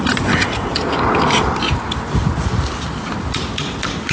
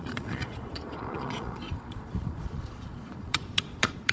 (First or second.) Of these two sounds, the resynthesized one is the second